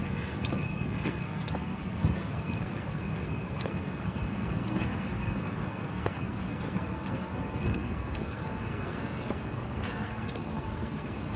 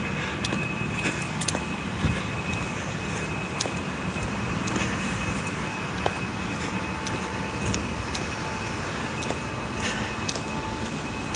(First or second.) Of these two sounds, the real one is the second